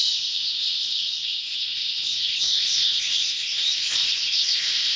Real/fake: fake